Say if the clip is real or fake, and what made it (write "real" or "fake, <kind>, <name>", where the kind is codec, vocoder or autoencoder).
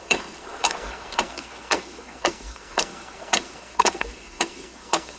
fake, codec, SNAC